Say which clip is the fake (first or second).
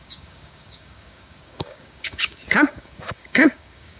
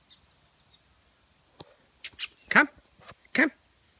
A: first